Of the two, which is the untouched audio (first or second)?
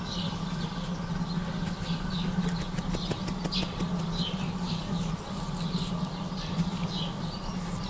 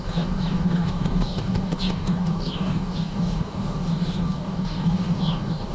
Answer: first